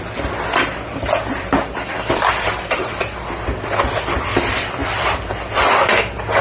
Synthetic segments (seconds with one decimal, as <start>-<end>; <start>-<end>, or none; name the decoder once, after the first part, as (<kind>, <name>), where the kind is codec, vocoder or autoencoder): 0.0-6.4 (vocoder, BigVGAN v2)